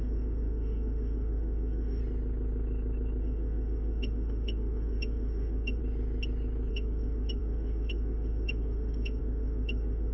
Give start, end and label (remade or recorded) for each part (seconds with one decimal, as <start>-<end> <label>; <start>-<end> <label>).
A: 0.0-2.0 remade; 2.0-3.2 recorded; 3.2-5.8 remade; 5.8-6.7 recorded; 6.7-10.1 remade